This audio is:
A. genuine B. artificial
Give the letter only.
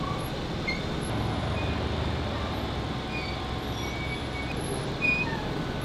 A